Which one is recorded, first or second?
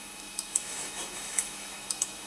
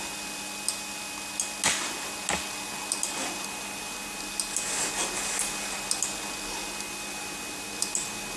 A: second